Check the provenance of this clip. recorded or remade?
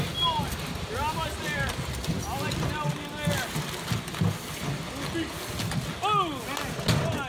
recorded